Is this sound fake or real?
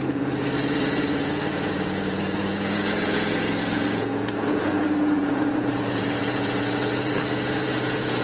fake